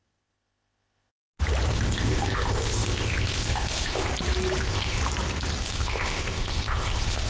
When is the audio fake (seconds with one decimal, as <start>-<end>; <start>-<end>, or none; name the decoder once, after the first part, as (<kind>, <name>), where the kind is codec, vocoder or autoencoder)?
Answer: 0.0-1.1 (codec, ZipCodec); 1.7-4.1; 4.6-5.0; 5.6-7.3